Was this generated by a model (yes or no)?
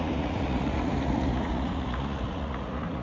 yes